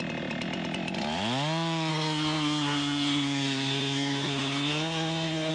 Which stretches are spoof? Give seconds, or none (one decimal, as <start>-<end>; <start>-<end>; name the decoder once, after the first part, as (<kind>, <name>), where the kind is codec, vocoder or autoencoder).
1.9-5.5 (codec, SNAC)